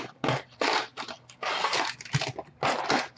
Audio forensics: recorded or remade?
recorded